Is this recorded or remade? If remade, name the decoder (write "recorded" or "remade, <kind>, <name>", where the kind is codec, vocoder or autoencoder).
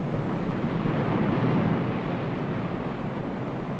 recorded